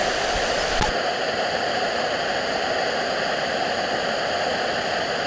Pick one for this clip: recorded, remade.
recorded